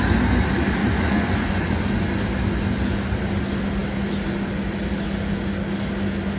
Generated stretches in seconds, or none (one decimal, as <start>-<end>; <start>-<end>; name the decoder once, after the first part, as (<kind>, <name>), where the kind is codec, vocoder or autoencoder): 0.8-1.8 (vocoder, Vocos)